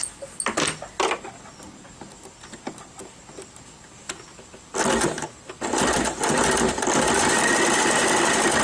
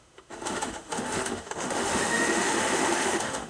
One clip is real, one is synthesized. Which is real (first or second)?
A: first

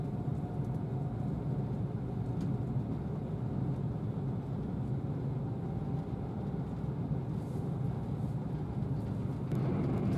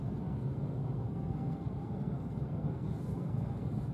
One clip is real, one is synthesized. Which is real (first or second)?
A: first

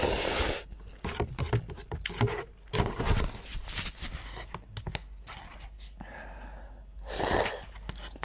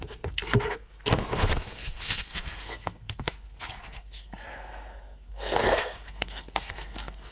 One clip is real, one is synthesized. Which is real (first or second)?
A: first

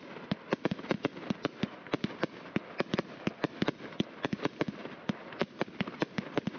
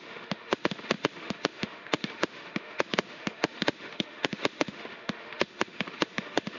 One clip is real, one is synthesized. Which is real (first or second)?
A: first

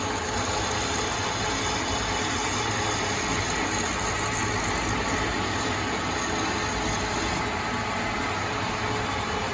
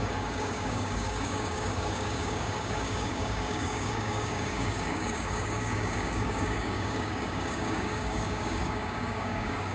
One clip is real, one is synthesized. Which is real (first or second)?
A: first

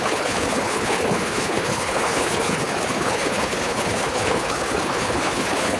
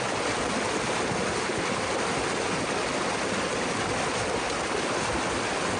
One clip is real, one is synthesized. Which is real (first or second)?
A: second